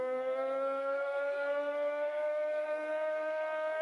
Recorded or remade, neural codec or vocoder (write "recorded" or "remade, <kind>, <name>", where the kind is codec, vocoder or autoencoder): remade, codec, SNAC